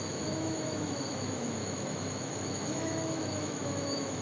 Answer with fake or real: fake